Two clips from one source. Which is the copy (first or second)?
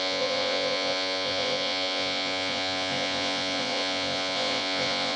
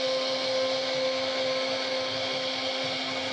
first